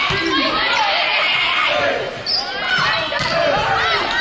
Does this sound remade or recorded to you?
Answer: recorded